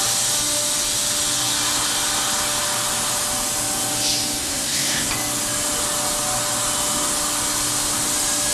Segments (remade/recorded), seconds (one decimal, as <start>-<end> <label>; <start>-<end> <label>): 0.0-4.4 recorded; 4.4-5.1 remade; 5.1-8.5 recorded